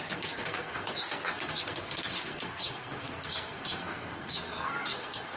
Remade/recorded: remade